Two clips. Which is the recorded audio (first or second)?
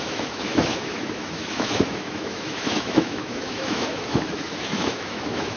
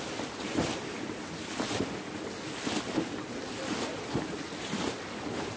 second